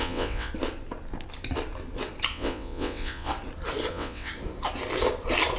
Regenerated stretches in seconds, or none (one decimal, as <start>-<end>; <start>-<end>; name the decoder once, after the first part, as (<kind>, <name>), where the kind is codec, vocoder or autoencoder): 0.0-0.5 (vocoder, WaveNeXt); 2.3-3.3; 3.9-4.3